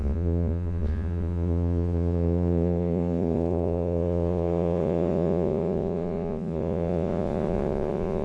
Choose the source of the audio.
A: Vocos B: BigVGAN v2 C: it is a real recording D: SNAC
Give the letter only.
A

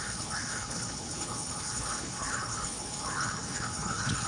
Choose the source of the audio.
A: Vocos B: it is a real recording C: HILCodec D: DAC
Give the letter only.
C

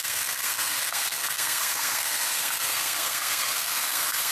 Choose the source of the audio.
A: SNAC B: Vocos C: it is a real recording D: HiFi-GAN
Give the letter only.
A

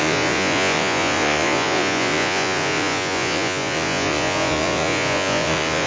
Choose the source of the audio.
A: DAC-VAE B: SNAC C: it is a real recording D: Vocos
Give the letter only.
D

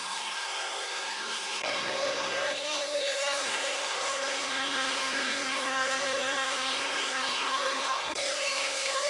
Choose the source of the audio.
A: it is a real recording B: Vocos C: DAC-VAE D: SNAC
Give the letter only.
D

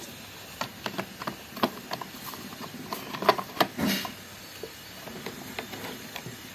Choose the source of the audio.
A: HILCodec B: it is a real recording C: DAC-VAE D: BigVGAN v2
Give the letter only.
B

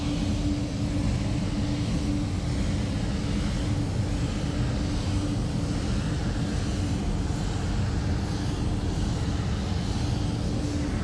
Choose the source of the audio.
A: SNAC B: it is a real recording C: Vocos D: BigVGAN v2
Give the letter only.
B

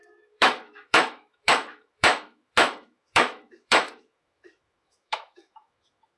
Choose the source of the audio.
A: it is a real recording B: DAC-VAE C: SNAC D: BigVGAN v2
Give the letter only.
B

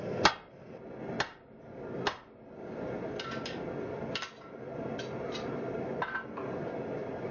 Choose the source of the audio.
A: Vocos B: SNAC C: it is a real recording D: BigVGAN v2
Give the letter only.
C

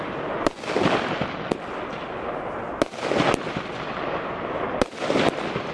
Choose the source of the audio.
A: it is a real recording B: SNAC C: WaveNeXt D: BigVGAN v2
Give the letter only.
A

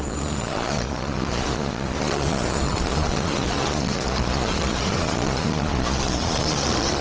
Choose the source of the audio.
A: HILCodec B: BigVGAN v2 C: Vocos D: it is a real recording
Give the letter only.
C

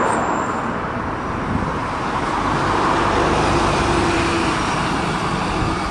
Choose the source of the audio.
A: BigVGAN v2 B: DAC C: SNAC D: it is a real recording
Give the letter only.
A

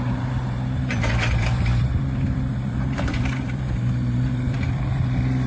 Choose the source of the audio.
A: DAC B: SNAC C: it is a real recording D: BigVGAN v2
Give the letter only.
D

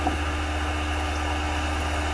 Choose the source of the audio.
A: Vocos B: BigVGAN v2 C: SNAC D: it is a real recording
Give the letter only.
D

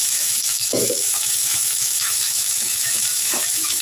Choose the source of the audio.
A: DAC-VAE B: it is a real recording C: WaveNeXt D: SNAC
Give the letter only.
A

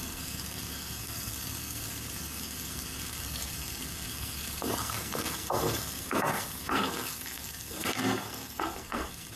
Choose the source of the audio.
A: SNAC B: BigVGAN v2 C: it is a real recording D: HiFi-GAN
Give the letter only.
A